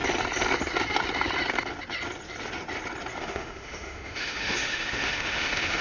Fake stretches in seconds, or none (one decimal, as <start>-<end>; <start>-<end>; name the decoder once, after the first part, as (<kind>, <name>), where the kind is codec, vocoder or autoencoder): 3.2-5.8 (autoencoder, DAC-VAE)